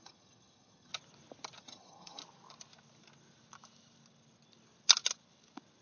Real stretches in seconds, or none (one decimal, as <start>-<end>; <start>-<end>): 0.9-1.6; 2.2-5.8